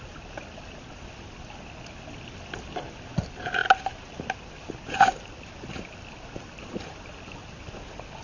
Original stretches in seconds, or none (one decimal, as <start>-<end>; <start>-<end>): 0.0-8.2